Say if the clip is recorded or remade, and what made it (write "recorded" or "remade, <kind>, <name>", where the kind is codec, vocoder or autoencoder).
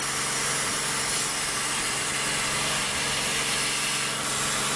recorded